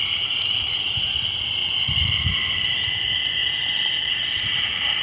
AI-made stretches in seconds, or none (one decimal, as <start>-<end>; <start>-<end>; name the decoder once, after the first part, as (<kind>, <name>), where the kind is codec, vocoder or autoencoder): 0.0-5.0 (vocoder, BigVGAN v2)